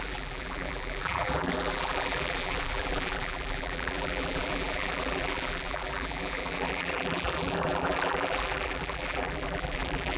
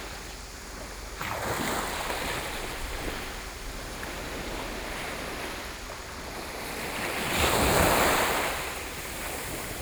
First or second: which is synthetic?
first